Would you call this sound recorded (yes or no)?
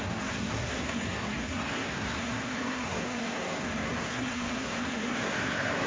no